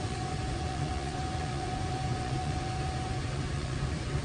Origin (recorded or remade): remade